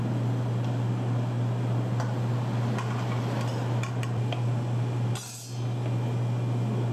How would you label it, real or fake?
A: real